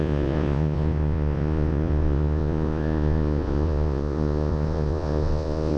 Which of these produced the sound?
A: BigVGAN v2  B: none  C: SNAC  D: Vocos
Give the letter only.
D